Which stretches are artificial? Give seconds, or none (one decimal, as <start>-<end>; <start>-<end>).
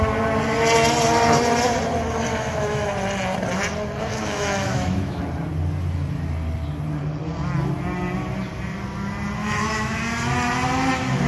2.3-2.9; 4.1-5.2; 9.4-10.0